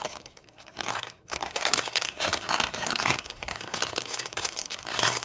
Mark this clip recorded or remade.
remade